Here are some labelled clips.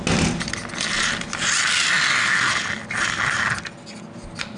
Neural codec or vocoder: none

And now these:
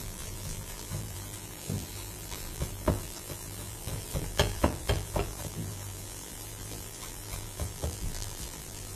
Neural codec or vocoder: vocoder, BigVGAN v2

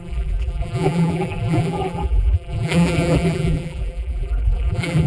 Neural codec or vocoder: vocoder, BigVGAN v2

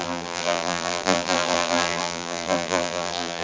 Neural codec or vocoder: vocoder, BigVGAN v2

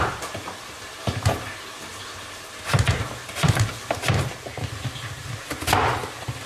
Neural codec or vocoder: none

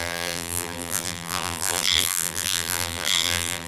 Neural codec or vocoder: vocoder, BigVGAN v2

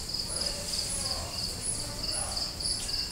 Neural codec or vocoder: vocoder, BigVGAN v2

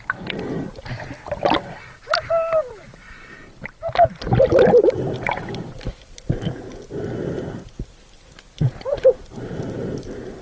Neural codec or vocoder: none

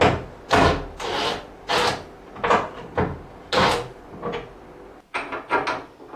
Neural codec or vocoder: none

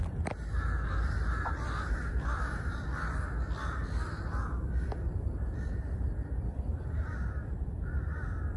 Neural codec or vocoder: vocoder, BigVGAN v2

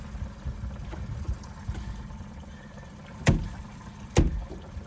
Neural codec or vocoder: none